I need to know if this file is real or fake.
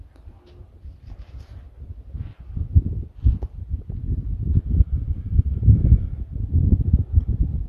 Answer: real